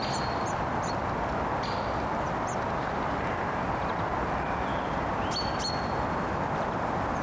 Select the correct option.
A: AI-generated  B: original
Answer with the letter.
B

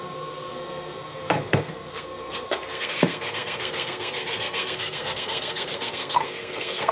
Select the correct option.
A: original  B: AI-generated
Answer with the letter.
B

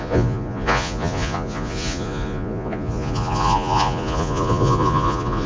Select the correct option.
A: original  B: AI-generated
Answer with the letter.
B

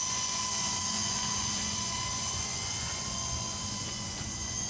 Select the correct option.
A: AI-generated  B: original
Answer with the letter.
A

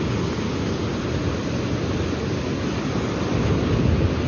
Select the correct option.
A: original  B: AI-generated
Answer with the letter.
A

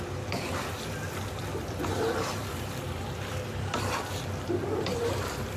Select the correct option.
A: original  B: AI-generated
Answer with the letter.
B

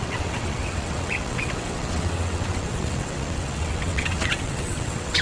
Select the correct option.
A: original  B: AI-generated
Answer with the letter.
B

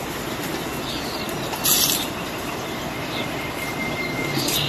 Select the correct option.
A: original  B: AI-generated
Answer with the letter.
A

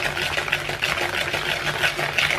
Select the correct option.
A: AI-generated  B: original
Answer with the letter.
B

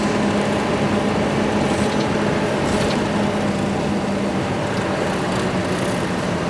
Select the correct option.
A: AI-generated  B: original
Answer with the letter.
B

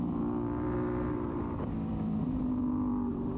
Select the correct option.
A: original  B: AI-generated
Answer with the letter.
B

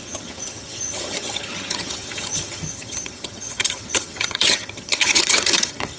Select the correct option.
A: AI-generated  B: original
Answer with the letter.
A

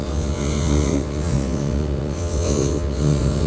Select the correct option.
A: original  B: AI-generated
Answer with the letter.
B